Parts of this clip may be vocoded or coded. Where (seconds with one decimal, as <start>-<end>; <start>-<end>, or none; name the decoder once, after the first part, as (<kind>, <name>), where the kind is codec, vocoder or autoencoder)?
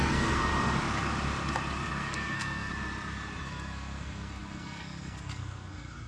0.0-0.5 (codec, SNAC); 1.9-2.7; 3.4-6.1